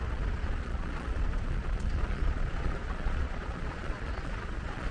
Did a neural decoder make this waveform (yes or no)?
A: yes